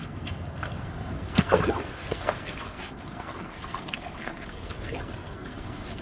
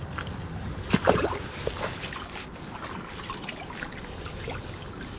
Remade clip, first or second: first